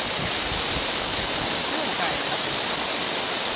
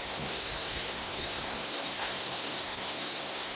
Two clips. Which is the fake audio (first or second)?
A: second